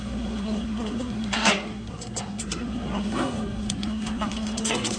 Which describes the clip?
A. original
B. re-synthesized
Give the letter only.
B